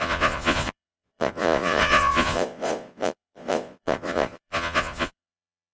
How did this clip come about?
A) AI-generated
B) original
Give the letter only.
A